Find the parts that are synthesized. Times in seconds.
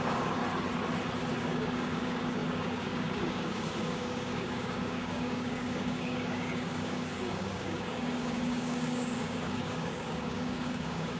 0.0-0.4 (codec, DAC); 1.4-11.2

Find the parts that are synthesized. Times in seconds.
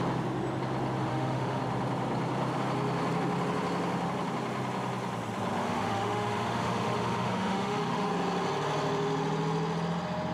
1.1-1.6 (autoencoder, DAC-VAE); 5.6-8.1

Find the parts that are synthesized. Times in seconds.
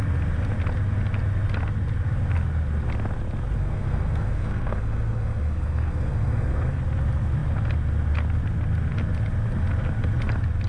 3.6-6.8 (codec, SNAC)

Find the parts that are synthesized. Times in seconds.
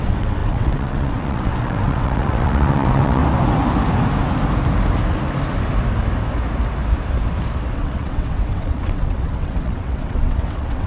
0.0-3.2 (vocoder, WaveNeXt); 7.7-10.9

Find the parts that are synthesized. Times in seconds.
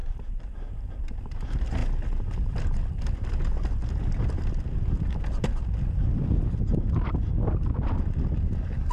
0.0-0.9 (vocoder, BigVGAN v2)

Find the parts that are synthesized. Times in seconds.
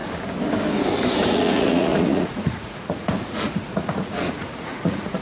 1.3-5.2 (vocoder, Vocos)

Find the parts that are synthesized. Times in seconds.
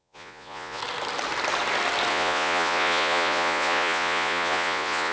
0.0-0.8 (vocoder, Vocos); 2.1-5.1